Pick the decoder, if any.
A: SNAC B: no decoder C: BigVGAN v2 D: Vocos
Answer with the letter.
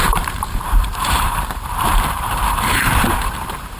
C